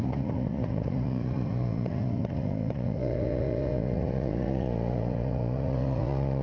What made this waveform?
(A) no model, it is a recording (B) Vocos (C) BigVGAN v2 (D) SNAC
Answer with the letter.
B